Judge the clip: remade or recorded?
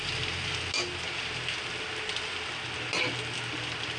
recorded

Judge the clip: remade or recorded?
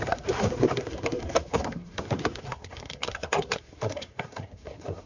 remade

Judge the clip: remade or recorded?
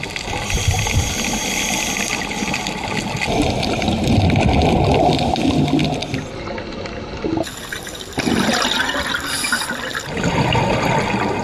recorded